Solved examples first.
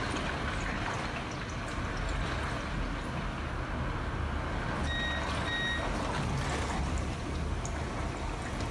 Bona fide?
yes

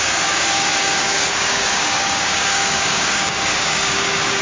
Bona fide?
no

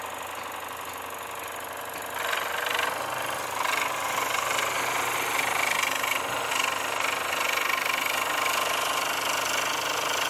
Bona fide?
yes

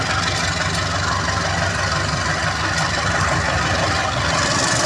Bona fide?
yes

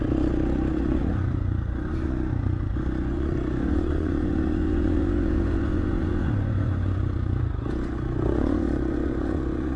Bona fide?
no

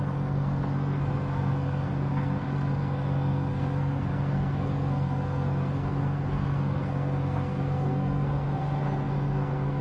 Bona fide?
no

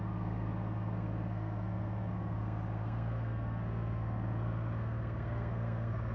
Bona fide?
no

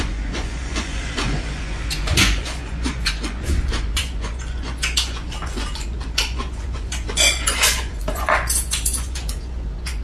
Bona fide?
no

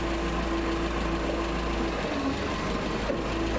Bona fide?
yes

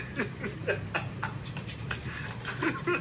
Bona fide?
yes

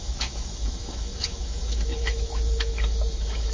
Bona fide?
no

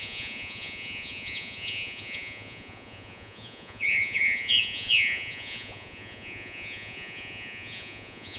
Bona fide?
no